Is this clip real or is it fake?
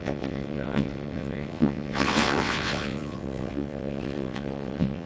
fake